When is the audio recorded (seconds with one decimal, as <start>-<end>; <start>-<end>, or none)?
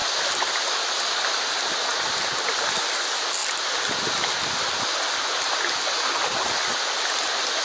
0.0-7.6